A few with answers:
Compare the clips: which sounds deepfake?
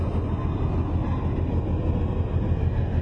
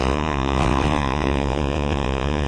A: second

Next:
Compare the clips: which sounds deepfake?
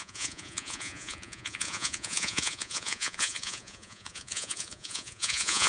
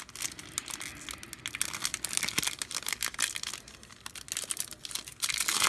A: first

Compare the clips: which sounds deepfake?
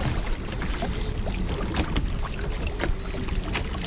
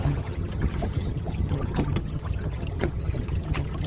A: second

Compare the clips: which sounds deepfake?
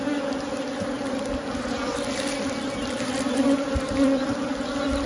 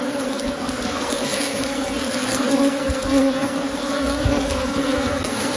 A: second